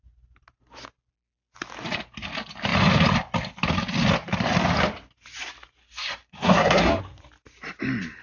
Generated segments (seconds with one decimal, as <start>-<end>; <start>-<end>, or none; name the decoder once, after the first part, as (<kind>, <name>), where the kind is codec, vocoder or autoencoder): 5.8-7.0 (codec, SNAC)